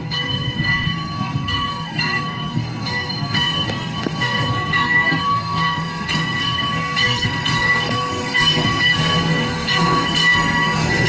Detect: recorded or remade remade